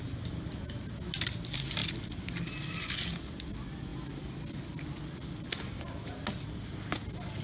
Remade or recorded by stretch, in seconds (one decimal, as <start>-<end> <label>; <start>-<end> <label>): 0.0-7.4 recorded